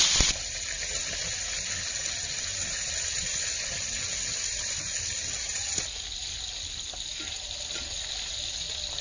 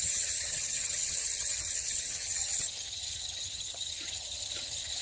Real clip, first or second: first